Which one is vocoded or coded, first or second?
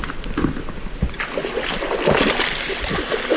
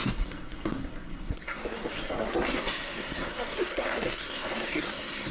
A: second